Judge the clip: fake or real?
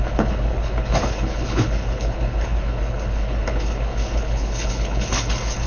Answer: fake